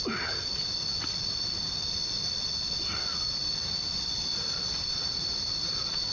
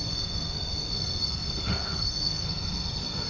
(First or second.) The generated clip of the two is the second